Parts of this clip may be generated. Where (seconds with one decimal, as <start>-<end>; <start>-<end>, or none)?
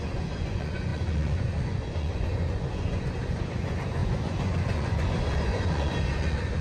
0.0-6.6